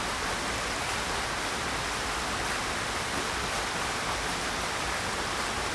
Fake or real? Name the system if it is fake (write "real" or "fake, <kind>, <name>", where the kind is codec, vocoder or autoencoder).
real